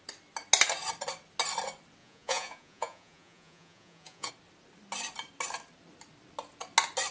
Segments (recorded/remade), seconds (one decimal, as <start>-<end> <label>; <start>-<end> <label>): 0.0-2.0 recorded; 2.0-4.3 remade; 4.3-7.1 recorded